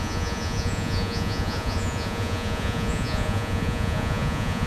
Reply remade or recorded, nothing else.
remade